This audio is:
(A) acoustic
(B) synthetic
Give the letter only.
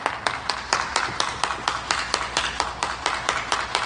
A